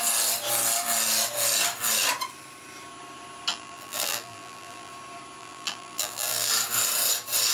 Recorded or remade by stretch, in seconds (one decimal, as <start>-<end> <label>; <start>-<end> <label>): 0.0-3.5 recorded; 3.5-4.9 remade; 4.9-5.4 recorded; 5.4-6.5 remade; 6.5-7.5 recorded